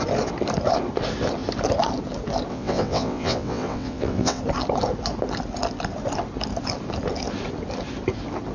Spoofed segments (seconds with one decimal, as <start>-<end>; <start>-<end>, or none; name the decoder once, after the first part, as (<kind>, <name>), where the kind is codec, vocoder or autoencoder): 2.5-4.4 (vocoder, WaveNeXt)